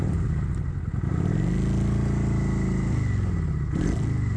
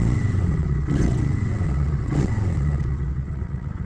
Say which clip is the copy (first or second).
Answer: second